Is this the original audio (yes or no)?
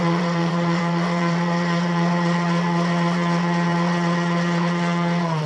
no